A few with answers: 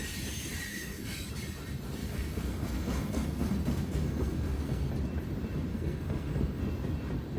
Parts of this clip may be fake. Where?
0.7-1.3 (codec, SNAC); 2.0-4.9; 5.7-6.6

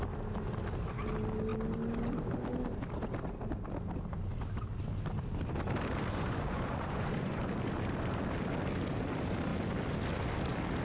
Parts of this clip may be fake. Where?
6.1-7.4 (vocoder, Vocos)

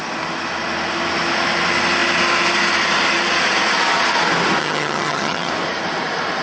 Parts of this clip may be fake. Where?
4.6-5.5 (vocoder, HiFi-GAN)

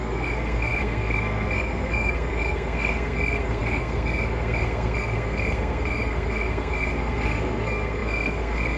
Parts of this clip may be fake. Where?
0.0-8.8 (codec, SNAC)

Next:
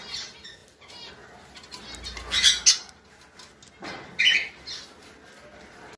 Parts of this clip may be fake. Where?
none